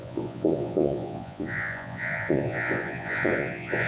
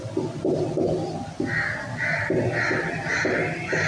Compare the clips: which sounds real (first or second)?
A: second